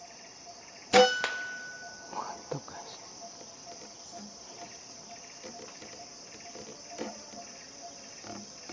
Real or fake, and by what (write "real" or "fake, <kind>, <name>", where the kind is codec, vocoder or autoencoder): real